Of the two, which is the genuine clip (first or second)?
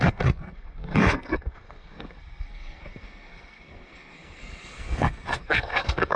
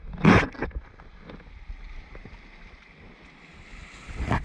second